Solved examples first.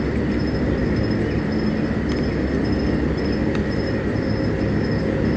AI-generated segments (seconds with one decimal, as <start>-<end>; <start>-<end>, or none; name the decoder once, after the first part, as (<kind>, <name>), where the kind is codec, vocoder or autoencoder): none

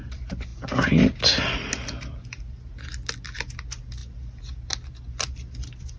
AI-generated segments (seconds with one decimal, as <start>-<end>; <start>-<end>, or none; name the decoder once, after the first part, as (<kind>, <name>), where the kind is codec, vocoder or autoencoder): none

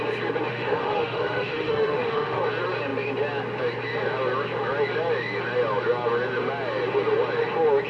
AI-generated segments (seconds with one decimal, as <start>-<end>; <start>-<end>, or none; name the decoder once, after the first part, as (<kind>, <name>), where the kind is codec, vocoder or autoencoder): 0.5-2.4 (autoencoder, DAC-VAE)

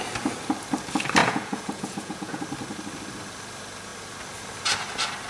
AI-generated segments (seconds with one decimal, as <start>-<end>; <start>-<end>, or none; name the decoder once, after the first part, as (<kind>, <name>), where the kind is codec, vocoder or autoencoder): 1.2-2.4 (vocoder, Vocos)

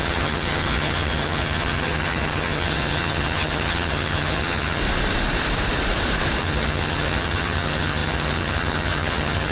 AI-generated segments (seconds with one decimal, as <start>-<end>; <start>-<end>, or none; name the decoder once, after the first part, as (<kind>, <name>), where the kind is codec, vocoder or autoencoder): 0.0-4.8 (vocoder, HiFi-GAN); 6.4-9.5

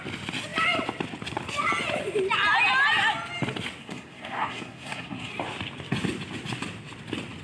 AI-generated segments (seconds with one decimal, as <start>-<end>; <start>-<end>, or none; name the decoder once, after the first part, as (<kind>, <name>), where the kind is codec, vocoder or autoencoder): 3.8-5.3 (codec, SNAC)

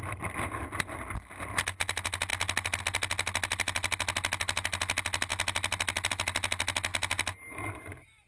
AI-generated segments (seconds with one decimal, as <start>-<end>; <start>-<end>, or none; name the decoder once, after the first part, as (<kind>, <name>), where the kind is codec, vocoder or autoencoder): none

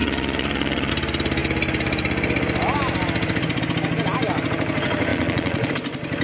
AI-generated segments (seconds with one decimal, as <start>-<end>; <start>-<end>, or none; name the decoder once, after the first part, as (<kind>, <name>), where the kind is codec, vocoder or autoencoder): 0.0-0.9 (vocoder, Vocos); 5.1-5.7